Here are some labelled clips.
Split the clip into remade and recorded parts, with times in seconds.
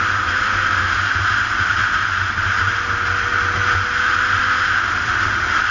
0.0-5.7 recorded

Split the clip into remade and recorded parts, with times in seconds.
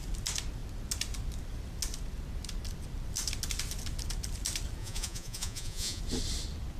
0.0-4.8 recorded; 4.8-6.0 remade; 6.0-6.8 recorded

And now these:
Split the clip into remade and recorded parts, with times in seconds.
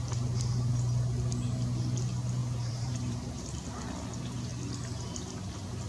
0.0-2.4 recorded; 2.4-3.4 remade; 3.4-5.9 recorded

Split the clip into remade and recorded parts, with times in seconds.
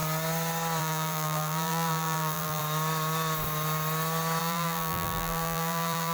0.0-0.8 recorded; 0.8-2.6 remade; 2.6-4.4 recorded; 4.4-6.1 remade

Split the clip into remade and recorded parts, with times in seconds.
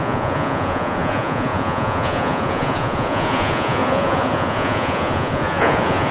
0.0-6.1 remade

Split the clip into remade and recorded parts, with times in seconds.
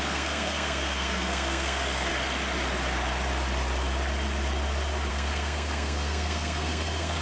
0.0-2.1 remade; 2.1-5.1 recorded; 5.1-7.2 remade